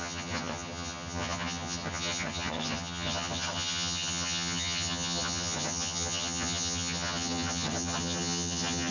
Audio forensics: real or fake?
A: fake